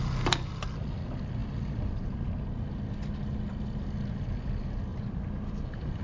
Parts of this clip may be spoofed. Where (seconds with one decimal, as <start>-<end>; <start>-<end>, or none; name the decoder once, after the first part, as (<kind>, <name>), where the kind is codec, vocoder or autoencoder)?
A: 4.9-6.0 (vocoder, BigVGAN v2)